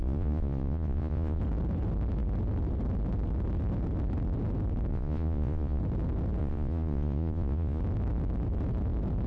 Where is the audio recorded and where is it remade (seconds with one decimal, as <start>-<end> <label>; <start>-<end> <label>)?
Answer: 0.0-1.4 remade; 1.4-4.9 recorded; 4.9-5.8 remade; 5.8-6.4 recorded; 6.4-7.8 remade; 7.8-9.3 recorded

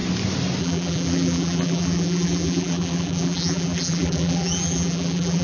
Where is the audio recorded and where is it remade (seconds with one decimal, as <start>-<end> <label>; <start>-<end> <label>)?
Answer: 0.0-0.6 recorded; 0.6-5.4 remade

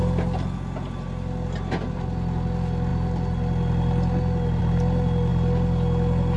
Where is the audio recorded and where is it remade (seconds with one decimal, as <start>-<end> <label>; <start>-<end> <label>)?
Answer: 0.0-6.4 recorded

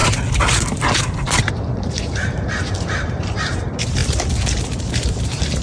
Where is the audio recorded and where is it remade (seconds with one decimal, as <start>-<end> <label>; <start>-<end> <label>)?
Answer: 0.0-1.5 recorded; 1.5-4.0 remade; 4.0-4.9 recorded; 4.9-5.6 remade

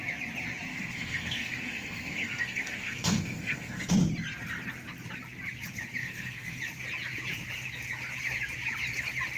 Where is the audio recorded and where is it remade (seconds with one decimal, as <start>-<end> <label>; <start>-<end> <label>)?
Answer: 0.0-0.7 recorded; 0.7-3.9 remade; 3.9-6.0 recorded; 6.0-6.6 remade; 6.6-9.4 recorded